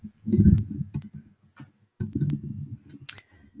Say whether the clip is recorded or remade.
recorded